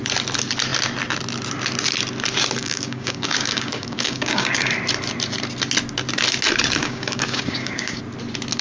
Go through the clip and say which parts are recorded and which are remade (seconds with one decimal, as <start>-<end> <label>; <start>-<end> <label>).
0.0-2.6 recorded; 2.6-4.7 remade; 4.7-6.8 recorded; 6.8-8.0 remade; 8.0-8.6 recorded